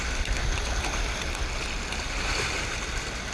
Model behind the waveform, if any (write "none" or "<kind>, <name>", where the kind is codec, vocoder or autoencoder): none